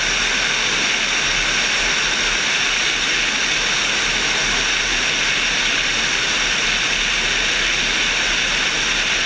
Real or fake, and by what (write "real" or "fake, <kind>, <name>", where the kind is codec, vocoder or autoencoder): real